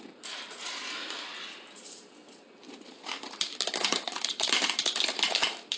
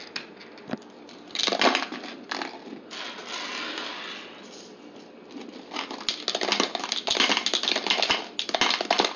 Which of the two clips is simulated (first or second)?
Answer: first